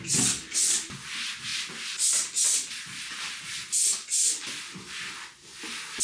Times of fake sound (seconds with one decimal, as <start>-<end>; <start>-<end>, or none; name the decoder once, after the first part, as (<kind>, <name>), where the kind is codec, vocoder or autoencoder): none